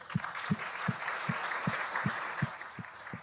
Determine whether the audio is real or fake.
fake